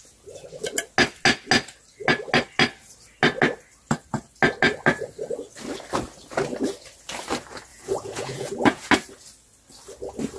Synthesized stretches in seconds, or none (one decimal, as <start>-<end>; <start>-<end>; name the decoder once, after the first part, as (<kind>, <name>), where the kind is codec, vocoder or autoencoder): 7.7-8.9 (vocoder, Vocos)